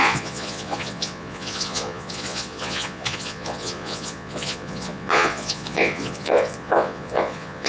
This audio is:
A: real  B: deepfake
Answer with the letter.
B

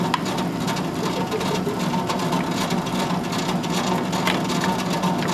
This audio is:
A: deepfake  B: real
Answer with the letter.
B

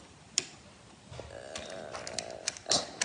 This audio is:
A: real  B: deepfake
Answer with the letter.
A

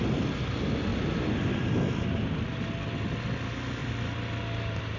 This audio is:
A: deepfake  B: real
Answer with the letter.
B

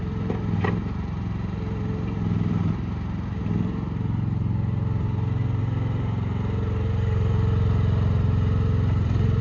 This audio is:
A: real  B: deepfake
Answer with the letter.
B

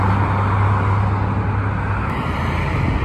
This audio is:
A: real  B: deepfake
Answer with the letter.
A